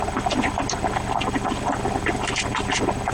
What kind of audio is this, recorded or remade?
recorded